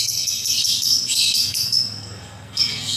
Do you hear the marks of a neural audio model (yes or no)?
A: yes